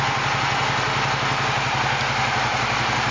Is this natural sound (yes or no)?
yes